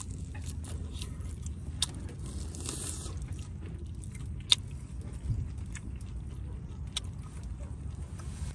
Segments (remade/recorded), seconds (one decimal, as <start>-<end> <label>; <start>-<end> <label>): 0.0-8.5 recorded